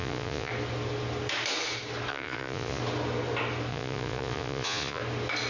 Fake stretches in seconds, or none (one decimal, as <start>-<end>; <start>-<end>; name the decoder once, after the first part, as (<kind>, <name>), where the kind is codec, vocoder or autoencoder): 0.0-0.5 (vocoder, Vocos); 2.1-2.8; 3.7-5.0